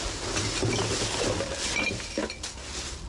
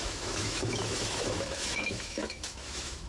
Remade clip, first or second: second